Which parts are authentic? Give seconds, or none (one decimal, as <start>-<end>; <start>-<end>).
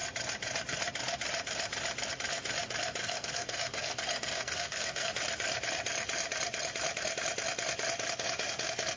0.0-3.0; 5.1-9.0